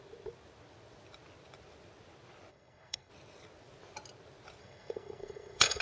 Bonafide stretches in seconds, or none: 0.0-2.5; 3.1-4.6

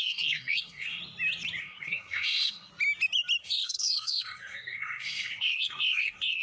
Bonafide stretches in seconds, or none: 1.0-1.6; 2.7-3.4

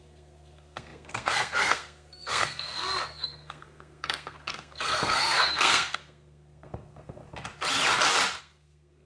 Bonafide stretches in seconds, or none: 7.2-8.4